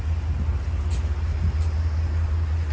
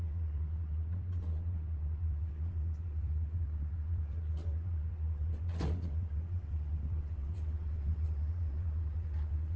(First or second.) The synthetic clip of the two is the second